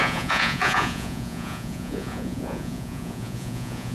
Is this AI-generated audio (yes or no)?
yes